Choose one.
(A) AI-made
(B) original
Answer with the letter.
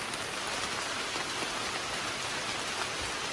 B